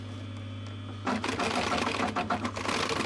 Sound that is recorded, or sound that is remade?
recorded